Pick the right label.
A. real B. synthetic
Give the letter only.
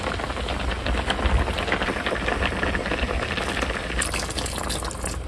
A